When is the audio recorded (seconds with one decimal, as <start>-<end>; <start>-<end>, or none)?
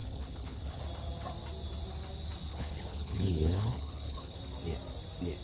0.8-2.5; 4.4-5.4